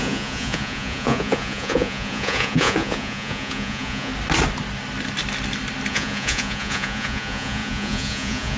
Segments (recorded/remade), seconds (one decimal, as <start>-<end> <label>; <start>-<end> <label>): 0.0-4.1 remade; 4.1-5.9 recorded; 5.9-8.6 remade